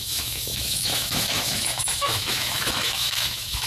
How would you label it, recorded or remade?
remade